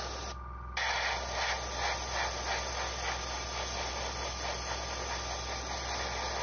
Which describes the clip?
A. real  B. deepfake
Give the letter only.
A